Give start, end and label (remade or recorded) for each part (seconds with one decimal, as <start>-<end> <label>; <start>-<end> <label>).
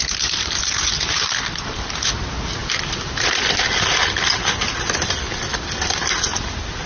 0.0-6.9 recorded